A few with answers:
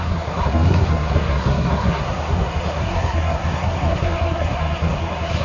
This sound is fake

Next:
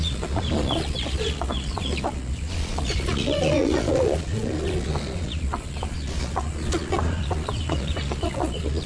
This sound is fake